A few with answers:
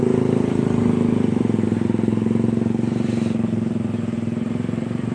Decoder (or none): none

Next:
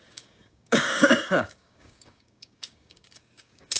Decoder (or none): codec, DAC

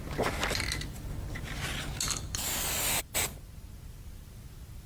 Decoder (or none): none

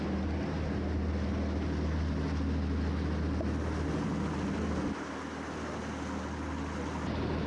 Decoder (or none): none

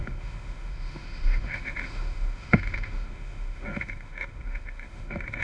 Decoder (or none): autoencoder, DAC-VAE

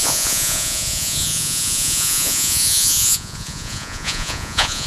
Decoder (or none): vocoder, Vocos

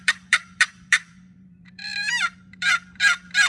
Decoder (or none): vocoder, BigVGAN v2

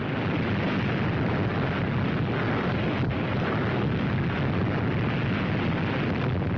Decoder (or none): none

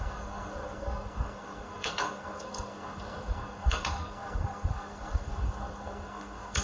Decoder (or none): codec, SNAC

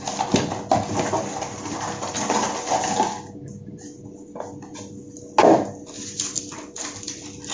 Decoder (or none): none